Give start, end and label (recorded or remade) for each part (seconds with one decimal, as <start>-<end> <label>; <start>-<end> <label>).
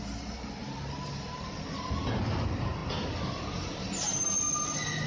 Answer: 0.0-0.6 recorded; 0.6-2.2 remade; 2.2-5.1 recorded